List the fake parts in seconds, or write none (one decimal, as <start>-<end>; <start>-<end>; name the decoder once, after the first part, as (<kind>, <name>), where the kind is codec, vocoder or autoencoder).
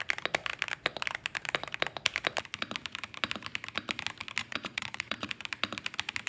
4.4-5.3 (vocoder, Vocos)